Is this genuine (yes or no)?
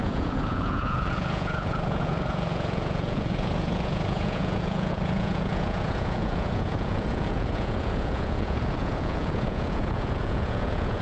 no